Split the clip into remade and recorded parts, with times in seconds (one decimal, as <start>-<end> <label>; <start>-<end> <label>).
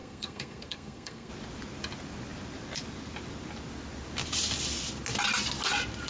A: 0.0-1.3 remade; 1.3-6.1 recorded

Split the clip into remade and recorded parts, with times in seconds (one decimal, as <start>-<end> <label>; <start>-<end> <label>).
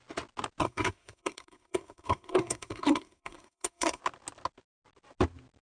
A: 0.0-0.6 recorded; 0.6-4.0 remade; 4.0-5.6 recorded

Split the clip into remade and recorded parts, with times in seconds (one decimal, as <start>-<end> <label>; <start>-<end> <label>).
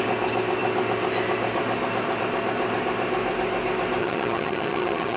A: 0.0-4.0 recorded; 4.0-5.2 remade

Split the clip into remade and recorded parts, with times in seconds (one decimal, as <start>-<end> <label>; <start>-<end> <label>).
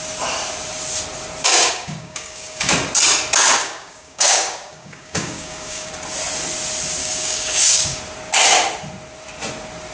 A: 0.0-1.5 recorded; 1.5-2.7 remade; 2.7-3.6 recorded; 3.6-5.9 remade; 5.9-7.0 recorded; 7.0-8.0 remade; 8.0-9.9 recorded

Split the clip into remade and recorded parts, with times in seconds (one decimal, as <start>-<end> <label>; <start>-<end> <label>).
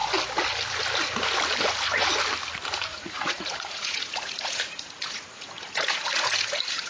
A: 0.0-2.9 recorded; 2.9-6.9 remade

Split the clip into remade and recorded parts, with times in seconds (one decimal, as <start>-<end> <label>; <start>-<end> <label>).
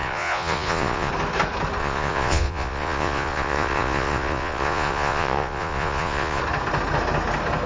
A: 0.0-1.1 remade; 1.1-1.8 recorded; 1.8-6.4 remade; 6.4-7.7 recorded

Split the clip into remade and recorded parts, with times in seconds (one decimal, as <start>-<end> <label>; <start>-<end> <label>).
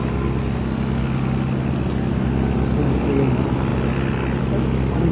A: 0.0-5.1 recorded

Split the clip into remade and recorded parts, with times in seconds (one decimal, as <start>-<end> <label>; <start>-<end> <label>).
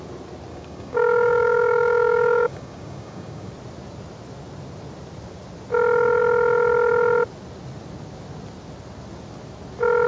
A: 0.0-0.5 recorded; 0.5-3.5 remade; 3.5-10.1 recorded